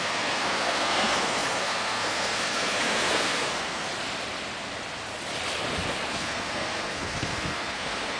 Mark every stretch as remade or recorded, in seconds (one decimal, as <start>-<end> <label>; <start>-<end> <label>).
0.0-3.9 remade; 3.9-6.1 recorded; 6.1-8.2 remade